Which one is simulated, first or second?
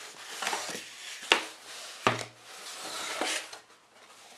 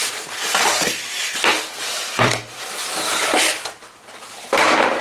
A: second